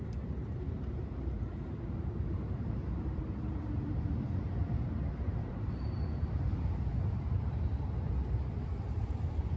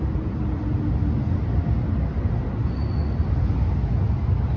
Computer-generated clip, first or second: first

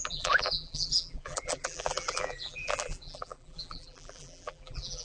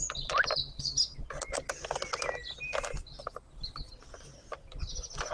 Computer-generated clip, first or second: first